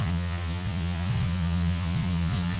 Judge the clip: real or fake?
fake